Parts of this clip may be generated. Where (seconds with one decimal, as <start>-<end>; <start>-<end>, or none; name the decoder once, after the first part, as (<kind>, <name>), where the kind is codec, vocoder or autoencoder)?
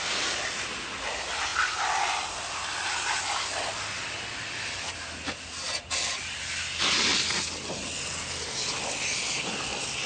none